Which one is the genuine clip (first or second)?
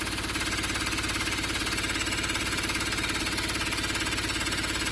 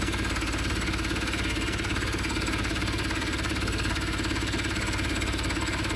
first